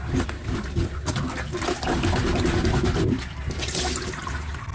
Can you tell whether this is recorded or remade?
recorded